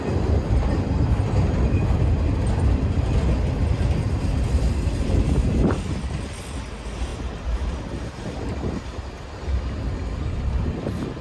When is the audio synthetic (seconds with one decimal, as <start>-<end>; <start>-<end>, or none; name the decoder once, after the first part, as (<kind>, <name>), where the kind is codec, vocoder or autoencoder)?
none